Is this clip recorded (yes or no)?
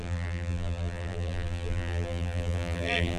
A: no